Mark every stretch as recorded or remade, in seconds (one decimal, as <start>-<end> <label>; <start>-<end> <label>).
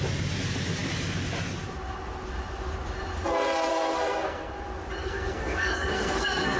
0.0-3.7 recorded; 3.7-4.5 remade; 4.5-5.0 recorded; 5.0-6.6 remade